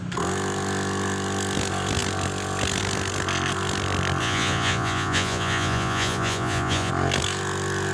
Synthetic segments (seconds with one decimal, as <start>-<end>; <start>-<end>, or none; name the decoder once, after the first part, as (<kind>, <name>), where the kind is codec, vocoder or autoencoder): 4.2-6.9 (vocoder, Vocos)